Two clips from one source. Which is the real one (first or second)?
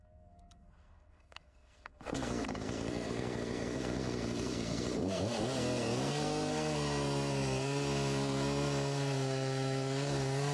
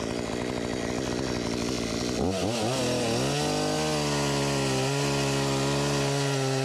second